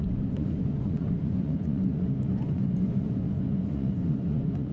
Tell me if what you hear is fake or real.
fake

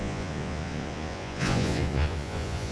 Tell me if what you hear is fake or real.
fake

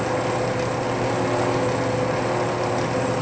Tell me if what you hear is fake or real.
real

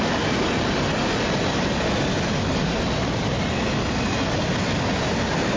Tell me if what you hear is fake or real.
real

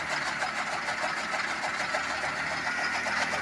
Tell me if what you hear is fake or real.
real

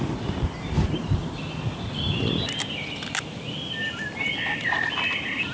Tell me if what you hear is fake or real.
real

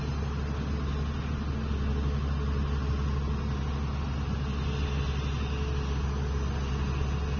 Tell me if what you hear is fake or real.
real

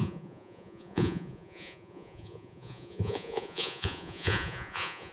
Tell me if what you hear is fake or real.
fake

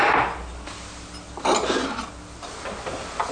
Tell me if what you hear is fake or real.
real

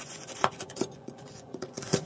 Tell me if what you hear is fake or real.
fake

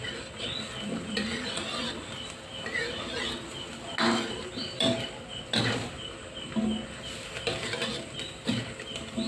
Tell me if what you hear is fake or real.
real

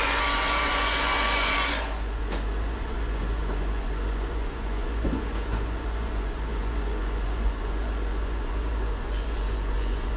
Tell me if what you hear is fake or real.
fake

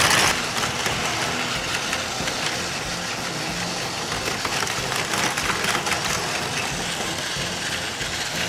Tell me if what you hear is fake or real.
real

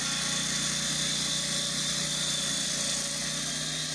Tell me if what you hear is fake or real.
real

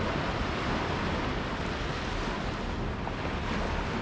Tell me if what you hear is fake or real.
real